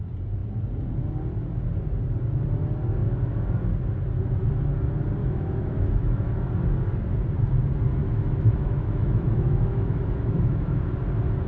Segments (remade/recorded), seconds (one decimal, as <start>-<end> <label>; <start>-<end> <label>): 0.0-5.2 recorded; 5.2-6.3 remade; 6.3-8.0 recorded; 8.0-10.8 remade; 10.8-11.5 recorded